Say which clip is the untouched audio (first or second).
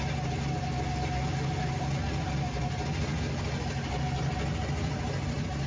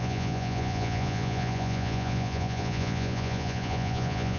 first